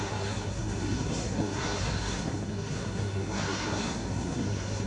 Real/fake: fake